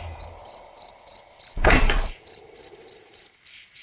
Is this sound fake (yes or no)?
yes